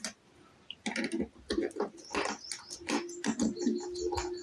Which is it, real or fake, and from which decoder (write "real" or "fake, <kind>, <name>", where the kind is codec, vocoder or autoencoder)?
real